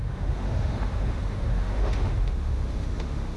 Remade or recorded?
remade